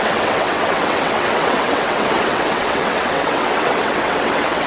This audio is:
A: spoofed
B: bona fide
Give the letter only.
A